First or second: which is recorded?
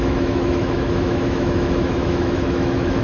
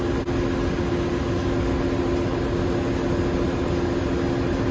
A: second